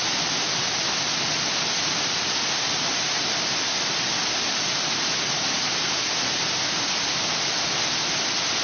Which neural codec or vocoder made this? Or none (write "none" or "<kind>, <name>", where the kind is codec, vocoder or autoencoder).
none